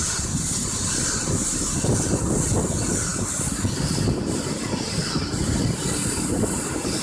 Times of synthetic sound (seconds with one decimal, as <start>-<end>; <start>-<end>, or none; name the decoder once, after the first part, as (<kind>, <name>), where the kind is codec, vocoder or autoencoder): none